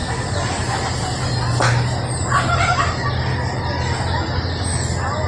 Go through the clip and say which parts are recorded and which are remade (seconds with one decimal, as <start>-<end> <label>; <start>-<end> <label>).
0.0-5.3 recorded